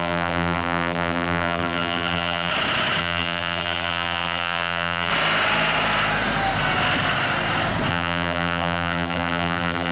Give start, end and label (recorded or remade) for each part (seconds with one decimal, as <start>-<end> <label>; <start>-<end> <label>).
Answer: 0.0-2.5 remade; 2.5-3.0 recorded; 3.0-5.1 remade; 5.1-7.9 recorded; 7.9-9.9 remade